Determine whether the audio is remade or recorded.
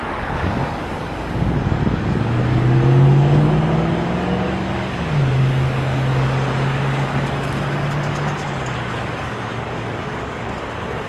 remade